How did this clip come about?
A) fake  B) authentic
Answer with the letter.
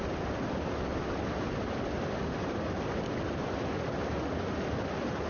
B